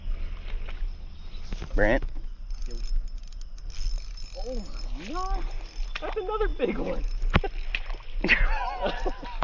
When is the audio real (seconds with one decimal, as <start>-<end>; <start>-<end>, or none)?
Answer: 0.0-6.5; 7.0-9.4